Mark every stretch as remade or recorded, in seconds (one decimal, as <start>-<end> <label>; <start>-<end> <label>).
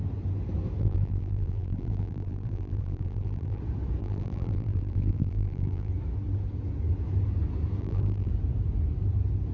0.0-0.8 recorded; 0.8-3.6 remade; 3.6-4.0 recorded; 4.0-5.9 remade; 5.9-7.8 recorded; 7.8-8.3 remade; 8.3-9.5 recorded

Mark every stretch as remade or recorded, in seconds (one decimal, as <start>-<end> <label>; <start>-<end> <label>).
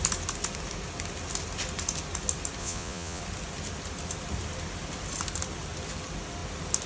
0.0-2.6 recorded; 2.6-3.2 remade; 3.2-6.9 recorded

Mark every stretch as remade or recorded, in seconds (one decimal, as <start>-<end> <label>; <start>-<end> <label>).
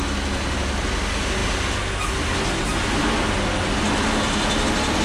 0.0-5.0 recorded